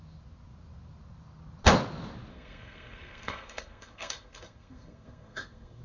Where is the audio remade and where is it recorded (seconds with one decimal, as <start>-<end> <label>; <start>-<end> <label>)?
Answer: 0.0-2.3 recorded; 2.3-5.8 remade